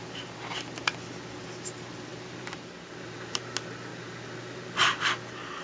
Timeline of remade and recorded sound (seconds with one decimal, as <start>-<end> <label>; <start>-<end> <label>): 0.0-2.1 recorded; 2.1-3.4 remade; 3.4-3.9 recorded; 3.9-5.0 remade; 5.0-5.6 recorded